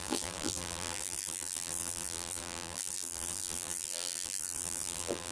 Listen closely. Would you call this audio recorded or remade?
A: remade